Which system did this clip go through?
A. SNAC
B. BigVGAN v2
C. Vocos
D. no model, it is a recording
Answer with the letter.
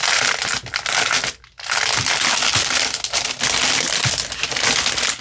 D